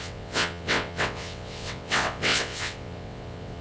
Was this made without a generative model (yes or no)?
no